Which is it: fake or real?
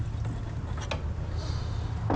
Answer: real